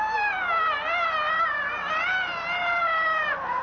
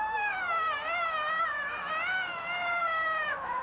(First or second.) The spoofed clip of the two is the second